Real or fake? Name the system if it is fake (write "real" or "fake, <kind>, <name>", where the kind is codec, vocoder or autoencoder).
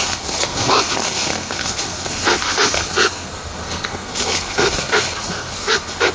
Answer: fake, codec, SNAC